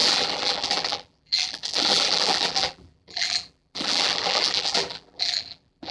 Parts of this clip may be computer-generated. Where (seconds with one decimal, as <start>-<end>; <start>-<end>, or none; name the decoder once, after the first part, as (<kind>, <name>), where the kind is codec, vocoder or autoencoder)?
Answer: 0.0-5.9 (vocoder, BigVGAN v2)